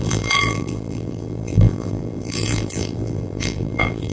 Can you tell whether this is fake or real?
fake